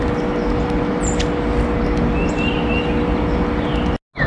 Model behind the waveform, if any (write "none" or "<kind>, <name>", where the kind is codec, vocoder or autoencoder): none